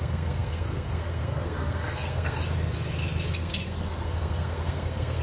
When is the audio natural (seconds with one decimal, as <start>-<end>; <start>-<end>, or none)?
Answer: 2.4-3.3